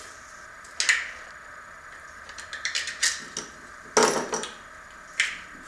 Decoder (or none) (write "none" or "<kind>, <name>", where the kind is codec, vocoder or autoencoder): none